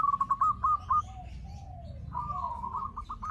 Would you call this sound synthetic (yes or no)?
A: no